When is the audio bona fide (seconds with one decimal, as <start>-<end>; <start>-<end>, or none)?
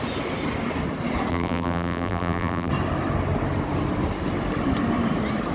0.0-1.3; 2.7-5.5